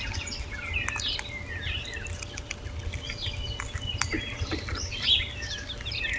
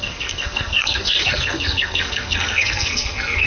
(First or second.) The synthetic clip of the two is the second